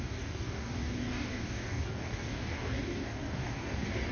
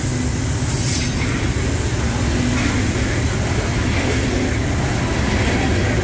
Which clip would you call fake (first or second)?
first